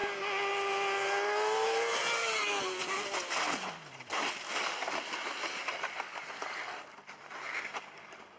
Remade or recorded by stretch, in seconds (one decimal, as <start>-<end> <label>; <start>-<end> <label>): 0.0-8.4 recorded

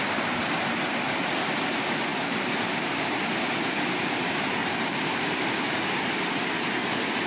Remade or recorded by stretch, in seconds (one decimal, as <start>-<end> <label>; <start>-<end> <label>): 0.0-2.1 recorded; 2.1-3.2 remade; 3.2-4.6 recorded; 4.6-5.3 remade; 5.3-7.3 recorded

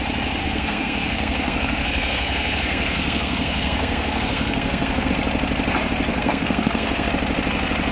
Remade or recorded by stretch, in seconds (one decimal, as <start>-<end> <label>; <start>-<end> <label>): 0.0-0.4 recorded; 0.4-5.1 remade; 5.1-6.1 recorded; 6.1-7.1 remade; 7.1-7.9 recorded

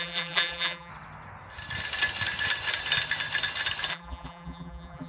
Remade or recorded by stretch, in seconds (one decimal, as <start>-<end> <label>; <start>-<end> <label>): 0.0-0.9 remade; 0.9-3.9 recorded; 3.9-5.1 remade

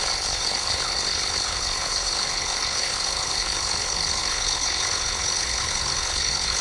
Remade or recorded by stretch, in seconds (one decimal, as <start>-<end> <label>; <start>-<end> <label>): 0.0-6.6 remade

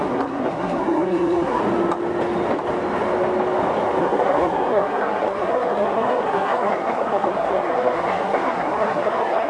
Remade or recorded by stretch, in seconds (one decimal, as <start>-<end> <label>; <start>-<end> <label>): 0.0-1.6 remade; 1.6-4.0 recorded; 4.0-9.5 remade

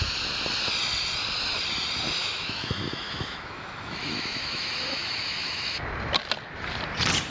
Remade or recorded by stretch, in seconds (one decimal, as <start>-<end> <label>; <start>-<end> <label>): 0.0-2.2 recorded; 2.2-5.8 remade; 5.8-7.3 recorded